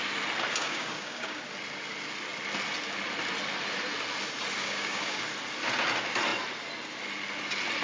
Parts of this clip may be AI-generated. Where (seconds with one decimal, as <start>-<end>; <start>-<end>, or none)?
0.6-1.4; 4.6-5.2